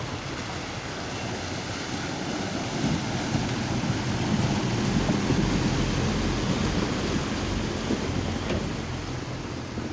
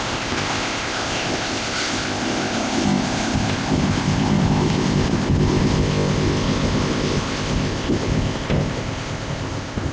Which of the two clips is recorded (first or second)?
first